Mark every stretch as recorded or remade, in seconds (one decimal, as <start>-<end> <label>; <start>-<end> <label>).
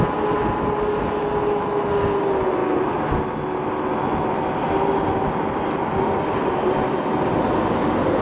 0.0-8.2 recorded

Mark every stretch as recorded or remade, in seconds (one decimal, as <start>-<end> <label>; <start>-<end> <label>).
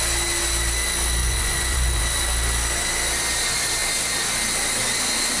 0.0-1.2 recorded; 1.2-2.0 remade; 2.0-5.4 recorded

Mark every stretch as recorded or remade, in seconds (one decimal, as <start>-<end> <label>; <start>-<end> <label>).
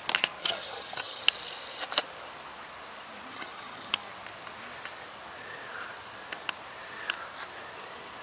0.0-0.4 recorded; 0.4-1.2 remade; 1.2-3.3 recorded; 3.3-3.9 remade; 3.9-8.2 recorded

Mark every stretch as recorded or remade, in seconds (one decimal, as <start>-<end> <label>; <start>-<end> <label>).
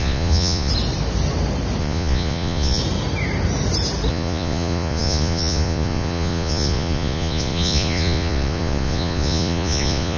0.0-0.7 remade; 0.7-1.8 recorded; 1.8-2.8 remade; 2.8-4.1 recorded; 4.1-10.2 remade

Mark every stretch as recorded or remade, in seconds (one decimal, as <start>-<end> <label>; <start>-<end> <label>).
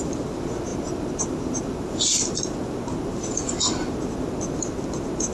0.0-5.3 recorded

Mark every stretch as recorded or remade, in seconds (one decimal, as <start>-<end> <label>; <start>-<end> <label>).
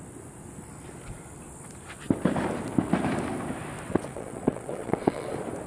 0.0-3.9 recorded; 3.9-5.3 remade; 5.3-5.7 recorded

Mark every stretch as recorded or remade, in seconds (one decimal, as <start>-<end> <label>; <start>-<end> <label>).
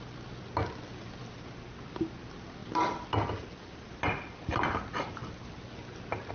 0.0-6.3 recorded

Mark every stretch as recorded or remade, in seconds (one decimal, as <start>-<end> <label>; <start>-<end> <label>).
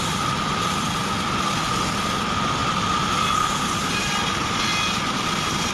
0.0-5.7 recorded